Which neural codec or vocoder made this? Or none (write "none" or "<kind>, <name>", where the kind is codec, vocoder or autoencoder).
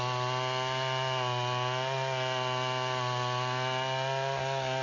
none